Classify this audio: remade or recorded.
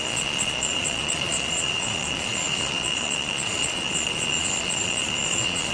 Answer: remade